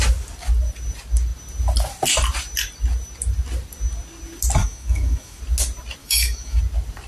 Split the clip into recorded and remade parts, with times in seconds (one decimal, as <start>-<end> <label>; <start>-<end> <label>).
0.0-4.6 recorded; 4.6-5.4 remade; 5.4-6.0 recorded; 6.0-6.6 remade; 6.6-7.1 recorded